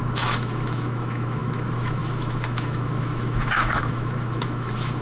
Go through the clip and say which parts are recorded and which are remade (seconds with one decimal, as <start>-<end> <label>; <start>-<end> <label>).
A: 0.0-5.0 remade